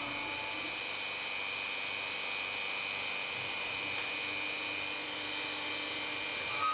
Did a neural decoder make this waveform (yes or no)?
no